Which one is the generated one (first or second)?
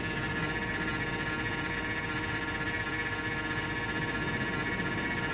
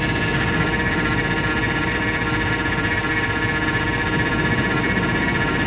second